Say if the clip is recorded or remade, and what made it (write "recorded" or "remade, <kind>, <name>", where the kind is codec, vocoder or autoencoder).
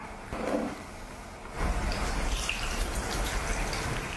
remade, vocoder, BigVGAN v2